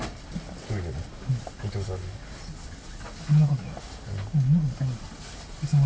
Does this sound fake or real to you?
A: real